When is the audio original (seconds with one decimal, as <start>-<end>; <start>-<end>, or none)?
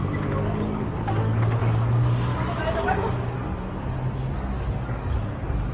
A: 0.0-5.7